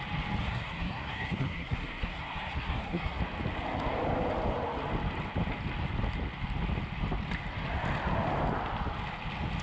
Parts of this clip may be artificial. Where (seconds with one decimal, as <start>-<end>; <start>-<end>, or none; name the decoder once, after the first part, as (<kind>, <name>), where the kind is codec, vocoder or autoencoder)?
0.4-3.2 (codec, SNAC)